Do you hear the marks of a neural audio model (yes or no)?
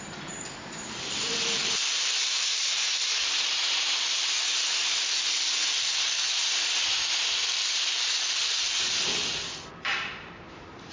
yes